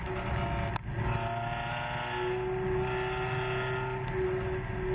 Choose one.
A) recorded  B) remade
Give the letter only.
A